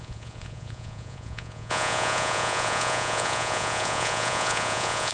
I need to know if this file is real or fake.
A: fake